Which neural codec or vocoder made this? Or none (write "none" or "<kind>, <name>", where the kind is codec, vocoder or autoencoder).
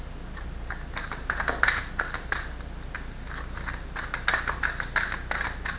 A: none